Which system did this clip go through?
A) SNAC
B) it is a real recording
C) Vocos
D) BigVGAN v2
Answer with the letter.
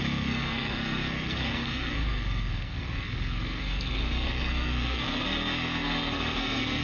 A